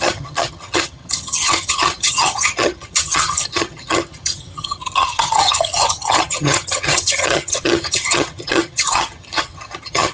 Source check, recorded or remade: remade